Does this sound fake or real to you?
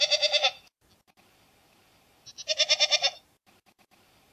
real